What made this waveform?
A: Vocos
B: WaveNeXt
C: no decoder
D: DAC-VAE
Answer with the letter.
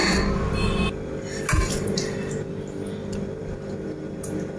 C